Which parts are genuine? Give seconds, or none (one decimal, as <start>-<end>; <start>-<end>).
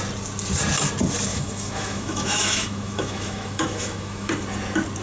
0.0-1.3; 4.3-5.0